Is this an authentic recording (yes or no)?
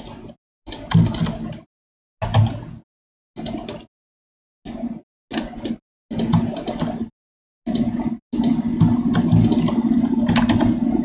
yes